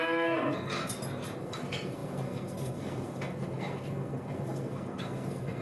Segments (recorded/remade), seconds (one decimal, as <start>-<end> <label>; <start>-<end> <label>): 0.0-0.8 remade; 0.8-1.4 recorded; 1.4-5.6 remade